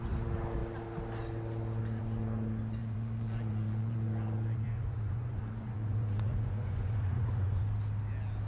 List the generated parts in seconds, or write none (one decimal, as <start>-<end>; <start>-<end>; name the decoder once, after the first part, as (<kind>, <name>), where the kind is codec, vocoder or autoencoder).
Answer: 2.8-7.6 (vocoder, Vocos)